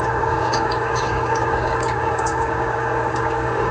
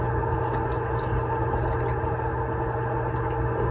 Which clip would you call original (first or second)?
second